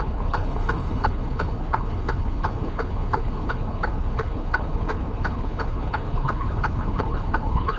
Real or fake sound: fake